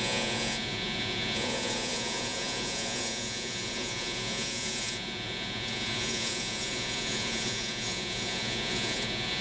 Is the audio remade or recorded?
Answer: remade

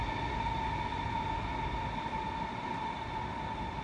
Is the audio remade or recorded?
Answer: recorded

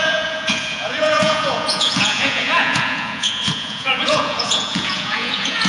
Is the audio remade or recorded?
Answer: remade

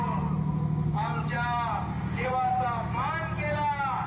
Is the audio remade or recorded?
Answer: recorded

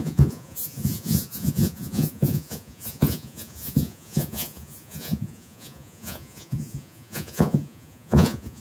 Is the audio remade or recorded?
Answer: remade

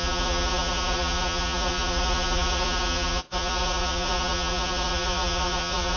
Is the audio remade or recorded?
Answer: remade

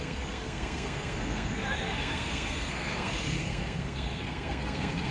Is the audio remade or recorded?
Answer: remade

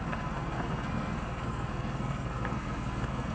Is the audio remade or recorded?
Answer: remade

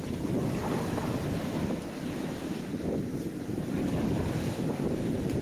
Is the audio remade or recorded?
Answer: recorded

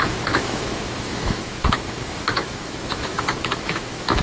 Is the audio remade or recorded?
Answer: remade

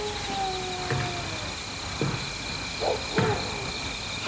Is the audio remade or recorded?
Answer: recorded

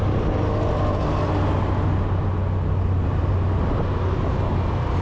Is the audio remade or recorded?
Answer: recorded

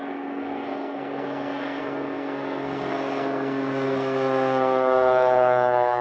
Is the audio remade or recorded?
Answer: remade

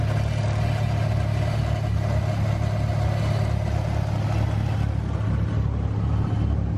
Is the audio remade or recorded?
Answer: recorded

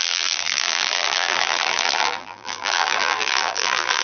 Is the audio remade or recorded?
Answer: remade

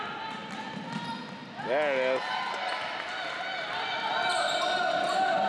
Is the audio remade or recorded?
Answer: recorded